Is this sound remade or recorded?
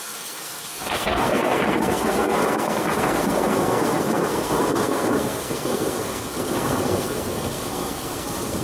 remade